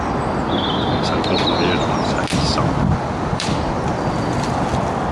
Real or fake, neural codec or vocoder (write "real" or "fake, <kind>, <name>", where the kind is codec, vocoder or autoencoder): real